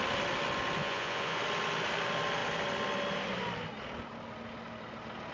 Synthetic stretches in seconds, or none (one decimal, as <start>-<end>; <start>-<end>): 0.8-1.4